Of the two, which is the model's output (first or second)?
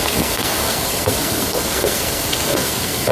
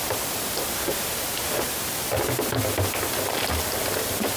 first